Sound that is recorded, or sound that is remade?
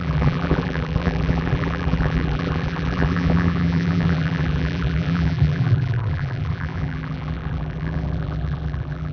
remade